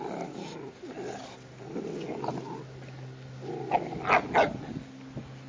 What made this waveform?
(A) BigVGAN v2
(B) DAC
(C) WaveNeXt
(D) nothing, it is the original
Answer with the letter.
D